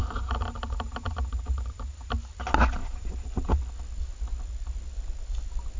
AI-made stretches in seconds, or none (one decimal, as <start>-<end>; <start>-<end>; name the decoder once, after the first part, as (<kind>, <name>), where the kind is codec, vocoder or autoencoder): 0.0-2.1 (vocoder, BigVGAN v2); 2.8-3.6